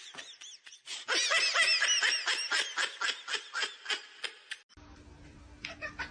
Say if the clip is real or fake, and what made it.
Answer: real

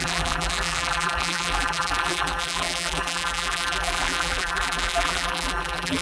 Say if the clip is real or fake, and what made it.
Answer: fake, vocoder, BigVGAN v2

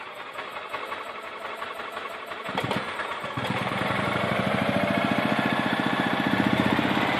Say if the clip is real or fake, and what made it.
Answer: fake, vocoder, BigVGAN v2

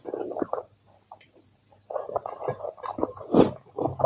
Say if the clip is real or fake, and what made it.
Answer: real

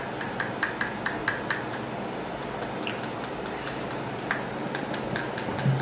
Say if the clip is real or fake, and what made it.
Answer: real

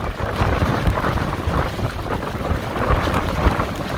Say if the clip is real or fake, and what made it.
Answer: fake, vocoder, BigVGAN v2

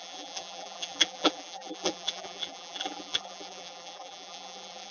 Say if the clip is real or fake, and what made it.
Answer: fake, vocoder, BigVGAN v2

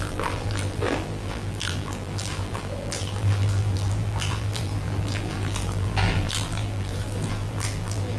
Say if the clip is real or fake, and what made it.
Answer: fake, vocoder, BigVGAN v2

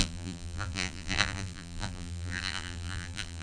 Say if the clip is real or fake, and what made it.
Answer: fake, vocoder, BigVGAN v2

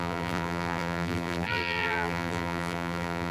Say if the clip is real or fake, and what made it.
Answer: fake, vocoder, BigVGAN v2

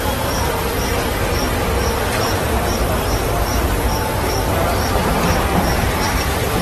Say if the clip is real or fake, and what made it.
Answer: fake, vocoder, BigVGAN v2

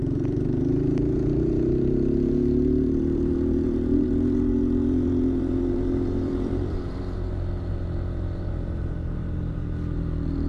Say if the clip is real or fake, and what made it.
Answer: fake, vocoder, BigVGAN v2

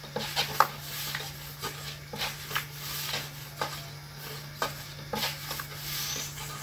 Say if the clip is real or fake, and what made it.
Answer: real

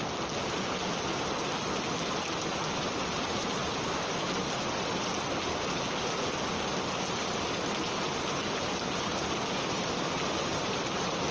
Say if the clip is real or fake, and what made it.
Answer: real